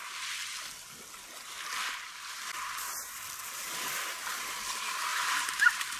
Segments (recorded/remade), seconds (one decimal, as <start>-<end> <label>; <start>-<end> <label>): 0.0-5.1 recorded; 5.1-6.0 remade